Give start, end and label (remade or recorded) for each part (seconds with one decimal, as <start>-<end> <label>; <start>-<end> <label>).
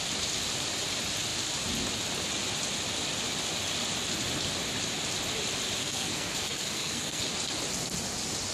0.0-5.8 recorded; 5.8-7.2 remade; 7.2-8.5 recorded